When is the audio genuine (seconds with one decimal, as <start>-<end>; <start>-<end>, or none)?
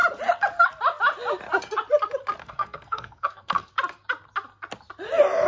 0.0-2.4; 3.7-5.5